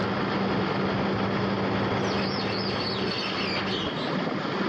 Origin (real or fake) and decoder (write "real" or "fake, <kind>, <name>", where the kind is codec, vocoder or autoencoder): real